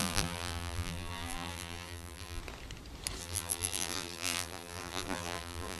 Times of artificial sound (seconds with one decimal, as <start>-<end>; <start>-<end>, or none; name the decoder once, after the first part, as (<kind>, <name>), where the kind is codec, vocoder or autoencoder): 0.0-2.4 (vocoder, BigVGAN v2); 3.2-5.8